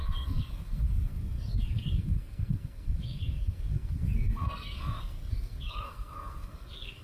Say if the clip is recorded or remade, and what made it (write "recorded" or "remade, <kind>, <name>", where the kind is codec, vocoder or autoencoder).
remade, codec, SNAC